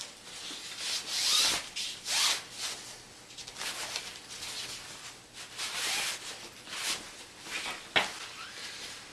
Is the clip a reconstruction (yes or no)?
no